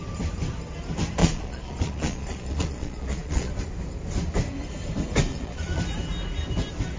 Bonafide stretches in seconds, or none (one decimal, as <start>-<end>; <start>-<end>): 0.0-1.2; 3.5-5.3; 5.8-7.0